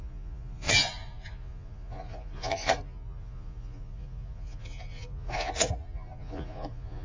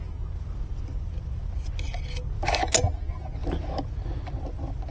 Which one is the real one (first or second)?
second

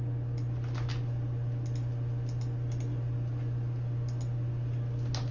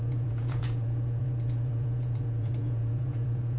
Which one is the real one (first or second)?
first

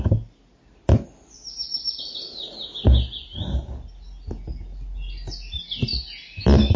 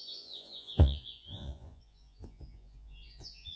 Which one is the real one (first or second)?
first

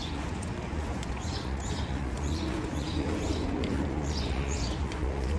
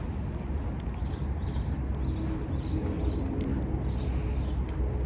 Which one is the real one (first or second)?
second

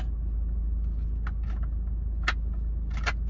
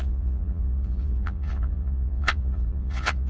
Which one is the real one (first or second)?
first